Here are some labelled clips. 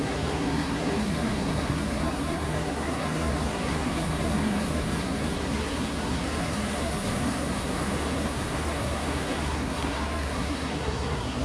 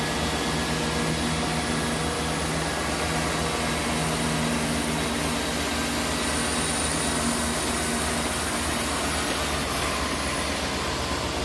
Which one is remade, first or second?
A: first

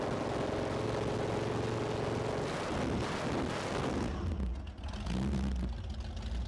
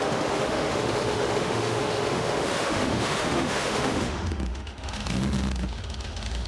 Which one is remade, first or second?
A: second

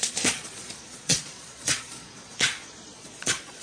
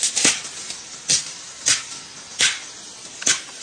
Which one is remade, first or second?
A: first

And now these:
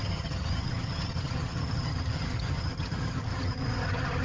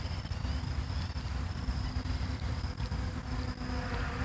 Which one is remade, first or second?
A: first